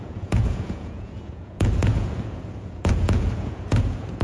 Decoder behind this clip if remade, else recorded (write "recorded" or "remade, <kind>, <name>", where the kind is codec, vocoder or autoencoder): remade, vocoder, Vocos